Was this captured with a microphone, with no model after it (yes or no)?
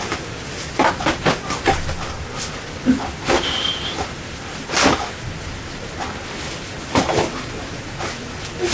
yes